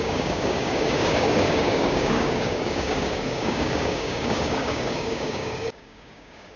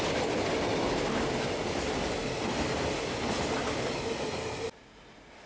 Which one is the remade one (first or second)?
first